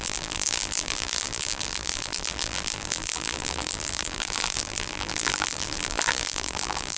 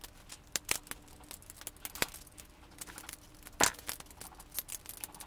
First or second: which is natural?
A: second